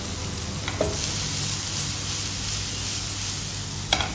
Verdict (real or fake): real